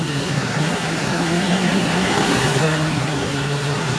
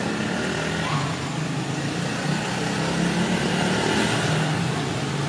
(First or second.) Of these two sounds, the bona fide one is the second